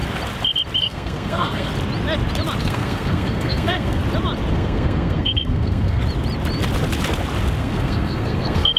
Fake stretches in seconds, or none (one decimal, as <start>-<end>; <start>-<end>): 0.8-1.7; 2.6-4.0; 4.5-6.0; 7.6-8.8